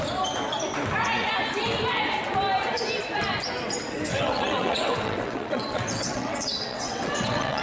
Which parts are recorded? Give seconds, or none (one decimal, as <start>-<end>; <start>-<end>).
0.0-4.1